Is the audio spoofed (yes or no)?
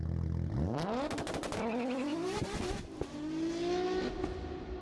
no